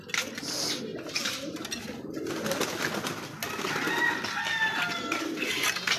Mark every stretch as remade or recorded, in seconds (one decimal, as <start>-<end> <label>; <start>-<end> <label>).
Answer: 0.0-6.0 recorded